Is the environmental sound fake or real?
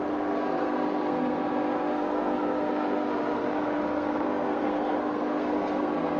fake